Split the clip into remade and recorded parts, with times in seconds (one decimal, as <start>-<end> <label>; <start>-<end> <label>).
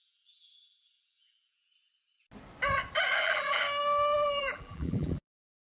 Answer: 0.0-1.7 remade; 1.7-3.2 recorded; 3.2-3.6 remade; 3.6-4.4 recorded; 4.4-5.7 remade